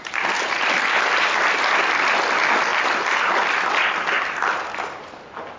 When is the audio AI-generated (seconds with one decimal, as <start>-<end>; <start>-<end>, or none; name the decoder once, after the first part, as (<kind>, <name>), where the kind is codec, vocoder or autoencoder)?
none